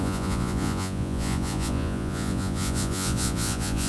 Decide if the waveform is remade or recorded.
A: remade